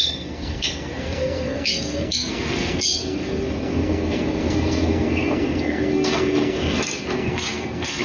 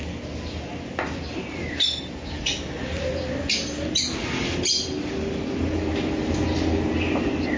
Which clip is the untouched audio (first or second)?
second